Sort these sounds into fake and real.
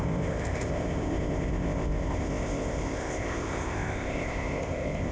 fake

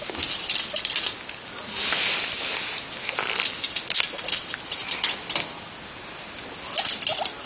real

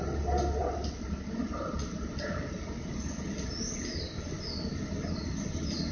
real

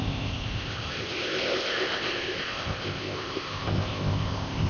fake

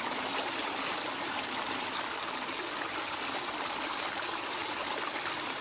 real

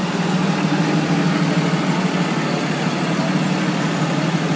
real